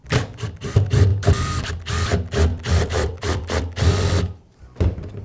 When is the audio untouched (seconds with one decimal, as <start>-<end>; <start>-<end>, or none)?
0.0-1.1; 1.7-2.5; 4.6-5.2